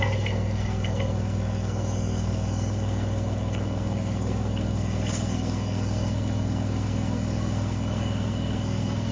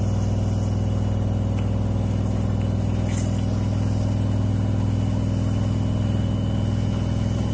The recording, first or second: second